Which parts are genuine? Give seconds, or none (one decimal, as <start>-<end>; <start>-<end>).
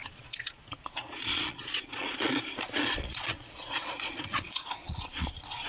2.4-2.9